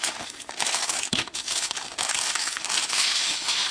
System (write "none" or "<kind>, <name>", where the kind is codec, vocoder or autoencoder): autoencoder, DAC-VAE